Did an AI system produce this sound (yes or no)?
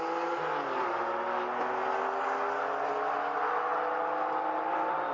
no